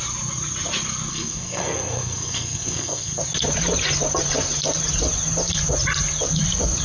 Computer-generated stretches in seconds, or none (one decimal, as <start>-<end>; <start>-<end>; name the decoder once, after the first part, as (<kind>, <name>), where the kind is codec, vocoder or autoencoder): 1.1-3.2 (codec, SNAC)

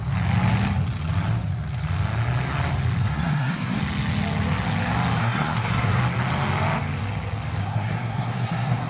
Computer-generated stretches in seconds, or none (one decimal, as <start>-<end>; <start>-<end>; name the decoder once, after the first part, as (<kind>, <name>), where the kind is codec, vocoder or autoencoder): 3.0-3.8 (codec, SNAC); 5.2-6.0; 7.6-8.9

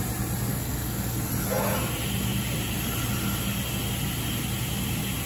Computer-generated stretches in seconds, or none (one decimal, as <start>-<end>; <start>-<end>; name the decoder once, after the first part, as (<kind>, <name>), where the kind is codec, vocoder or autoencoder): 0.5-1.3 (codec, SNAC)

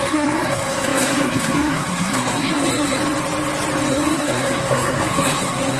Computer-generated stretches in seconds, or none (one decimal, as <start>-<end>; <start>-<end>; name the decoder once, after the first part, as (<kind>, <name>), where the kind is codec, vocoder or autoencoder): 0.0-3.0 (codec, SNAC); 3.9-5.8

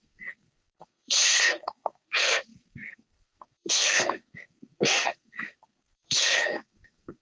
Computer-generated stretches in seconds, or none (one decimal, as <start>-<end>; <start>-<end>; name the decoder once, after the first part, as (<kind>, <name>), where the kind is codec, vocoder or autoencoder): 0.0-7.2 (codec, SNAC)

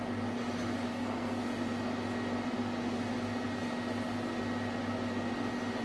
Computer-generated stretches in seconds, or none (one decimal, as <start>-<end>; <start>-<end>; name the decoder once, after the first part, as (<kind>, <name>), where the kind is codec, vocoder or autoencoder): 0.9-1.4 (codec, SNAC)

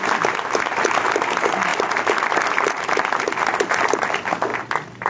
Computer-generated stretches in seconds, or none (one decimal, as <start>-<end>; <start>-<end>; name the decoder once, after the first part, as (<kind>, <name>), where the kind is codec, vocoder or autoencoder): none

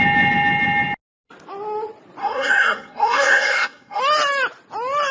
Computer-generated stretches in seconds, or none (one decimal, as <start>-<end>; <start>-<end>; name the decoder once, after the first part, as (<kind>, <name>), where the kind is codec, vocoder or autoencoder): 2.2-4.0 (codec, SNAC)